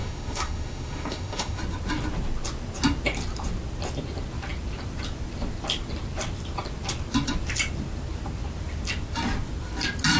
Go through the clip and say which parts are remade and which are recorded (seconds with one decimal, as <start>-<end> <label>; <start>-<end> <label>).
0.0-1.6 remade; 1.6-10.2 recorded